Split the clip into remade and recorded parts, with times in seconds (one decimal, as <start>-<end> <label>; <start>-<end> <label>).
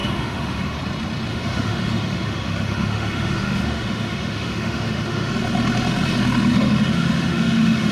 0.0-0.8 remade; 0.8-1.3 recorded; 1.3-5.3 remade; 5.3-6.5 recorded; 6.5-7.9 remade